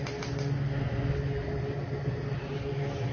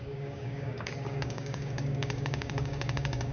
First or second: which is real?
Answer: first